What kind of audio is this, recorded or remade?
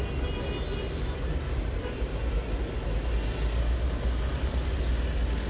recorded